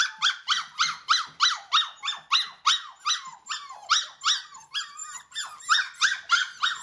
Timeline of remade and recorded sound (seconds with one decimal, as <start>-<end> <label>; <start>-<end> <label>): 0.0-6.8 recorded